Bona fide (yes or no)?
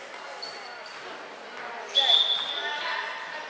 yes